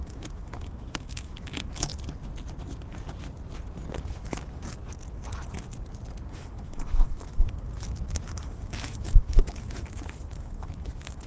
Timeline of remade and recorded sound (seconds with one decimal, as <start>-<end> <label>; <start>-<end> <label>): 0.0-1.9 remade; 1.9-3.9 recorded; 3.9-4.8 remade; 4.8-6.3 recorded; 6.3-11.3 remade